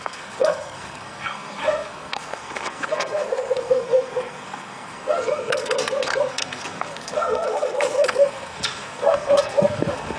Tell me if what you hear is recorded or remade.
remade